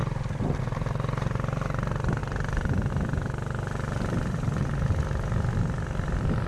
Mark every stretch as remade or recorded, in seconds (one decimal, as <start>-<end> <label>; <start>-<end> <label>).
0.0-6.5 recorded